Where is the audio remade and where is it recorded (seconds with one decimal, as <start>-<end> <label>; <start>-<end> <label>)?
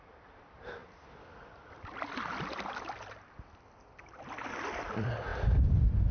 0.0-6.1 remade